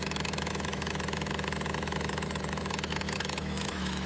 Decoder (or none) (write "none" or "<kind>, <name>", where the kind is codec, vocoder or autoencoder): autoencoder, DAC-VAE